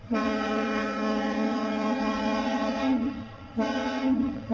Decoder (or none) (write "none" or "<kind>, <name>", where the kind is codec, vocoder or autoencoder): vocoder, Vocos